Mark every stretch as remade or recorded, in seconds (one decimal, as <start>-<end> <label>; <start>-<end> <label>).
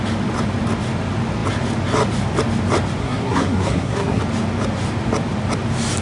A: 0.0-3.0 recorded; 3.0-4.2 remade; 4.2-6.0 recorded